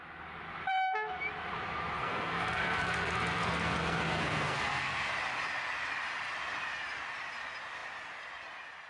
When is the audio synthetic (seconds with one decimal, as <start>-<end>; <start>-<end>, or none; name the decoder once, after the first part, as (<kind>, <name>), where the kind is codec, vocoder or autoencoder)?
2.0-5.1 (codec, SNAC)